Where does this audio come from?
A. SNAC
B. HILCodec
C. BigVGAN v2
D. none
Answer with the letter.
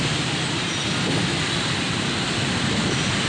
C